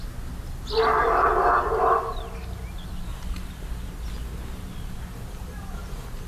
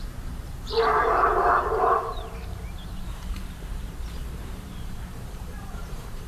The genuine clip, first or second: first